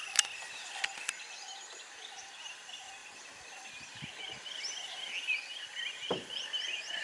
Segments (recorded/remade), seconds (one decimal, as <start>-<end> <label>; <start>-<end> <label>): 0.0-7.0 recorded